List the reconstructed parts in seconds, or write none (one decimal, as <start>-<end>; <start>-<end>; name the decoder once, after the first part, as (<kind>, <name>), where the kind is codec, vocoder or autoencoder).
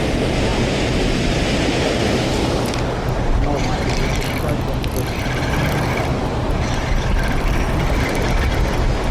none